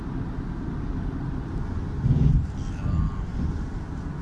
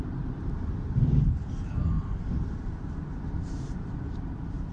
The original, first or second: first